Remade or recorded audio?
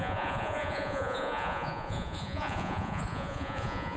remade